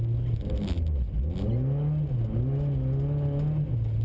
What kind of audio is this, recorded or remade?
recorded